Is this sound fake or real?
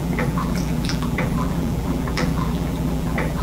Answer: fake